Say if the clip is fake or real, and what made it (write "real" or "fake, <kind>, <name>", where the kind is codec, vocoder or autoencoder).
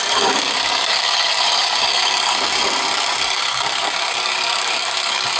fake, codec, DAC